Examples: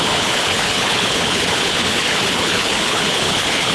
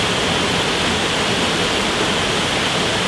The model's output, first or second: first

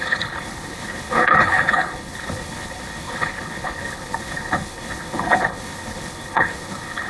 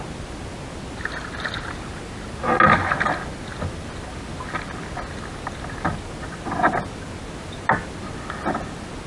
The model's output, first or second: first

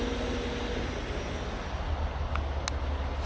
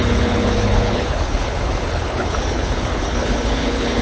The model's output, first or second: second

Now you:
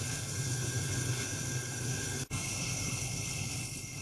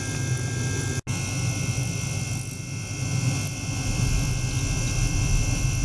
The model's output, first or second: first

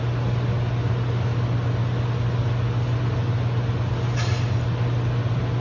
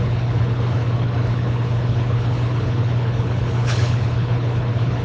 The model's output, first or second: second